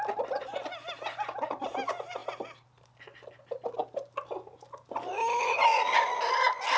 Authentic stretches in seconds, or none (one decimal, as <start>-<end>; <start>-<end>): 0.0-6.8